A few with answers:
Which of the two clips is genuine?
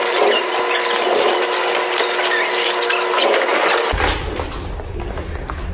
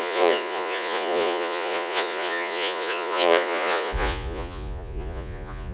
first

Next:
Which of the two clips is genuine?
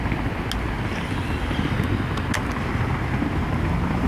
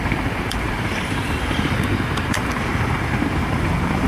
first